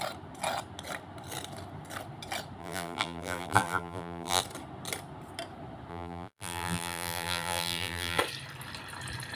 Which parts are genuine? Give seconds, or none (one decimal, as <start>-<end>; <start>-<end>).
0.0-2.6; 4.4-5.9; 8.2-9.4